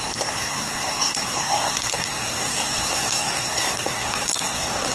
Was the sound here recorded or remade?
remade